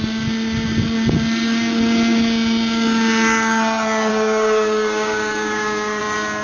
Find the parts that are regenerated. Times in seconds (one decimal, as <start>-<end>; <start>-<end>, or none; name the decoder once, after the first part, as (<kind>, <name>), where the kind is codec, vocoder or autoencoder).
4.1-6.0 (codec, DAC)